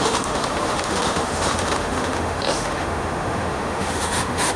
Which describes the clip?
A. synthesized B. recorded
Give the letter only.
A